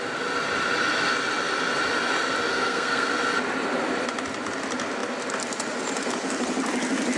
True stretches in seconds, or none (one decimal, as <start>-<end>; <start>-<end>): 0.0-2.5; 3.1-7.2